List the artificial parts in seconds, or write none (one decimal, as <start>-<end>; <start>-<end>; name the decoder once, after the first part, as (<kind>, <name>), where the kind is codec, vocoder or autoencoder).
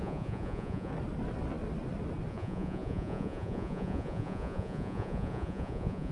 0.0-0.9 (vocoder, Vocos); 2.3-6.1